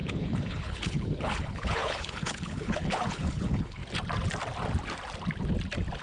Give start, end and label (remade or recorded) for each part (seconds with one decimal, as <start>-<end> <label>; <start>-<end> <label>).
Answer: 0.0-3.8 remade; 3.8-6.0 recorded